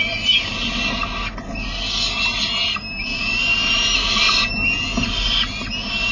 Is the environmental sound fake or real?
real